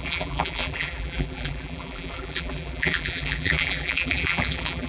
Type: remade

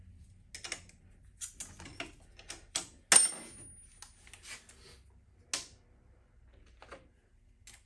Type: recorded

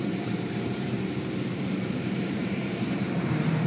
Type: remade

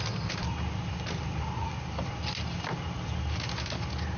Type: recorded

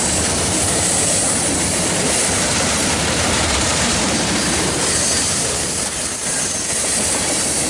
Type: remade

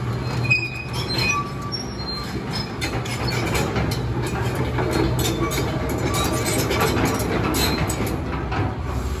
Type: recorded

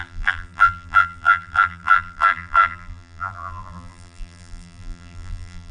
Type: remade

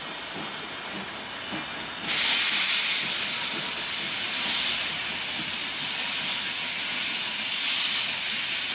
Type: recorded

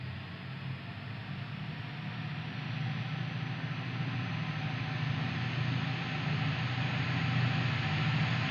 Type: recorded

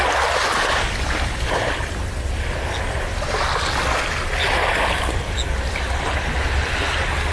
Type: recorded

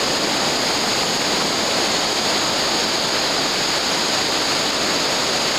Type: recorded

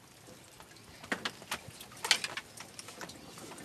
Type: recorded